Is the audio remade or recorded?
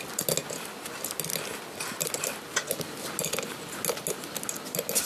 recorded